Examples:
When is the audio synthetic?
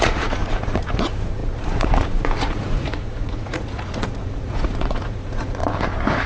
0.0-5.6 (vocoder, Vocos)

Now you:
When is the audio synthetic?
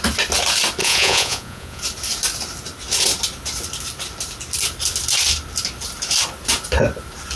0.8-1.8 (vocoder, Vocos)